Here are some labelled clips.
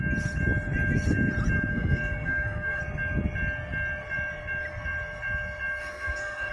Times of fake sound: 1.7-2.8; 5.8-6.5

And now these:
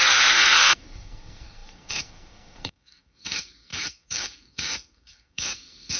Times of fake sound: 0.0-6.0

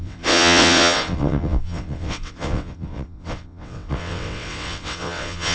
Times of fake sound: 0.0-5.5

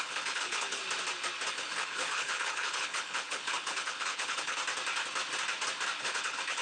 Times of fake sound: 0.0-0.8; 1.5-4.6; 6.0-6.6

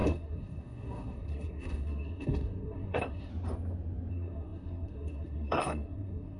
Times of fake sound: 0.0-3.3; 4.1-6.4

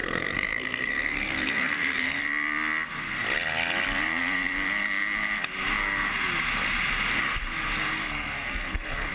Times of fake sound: 0.0-2.2; 8.0-9.1